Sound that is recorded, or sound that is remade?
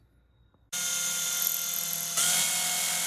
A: recorded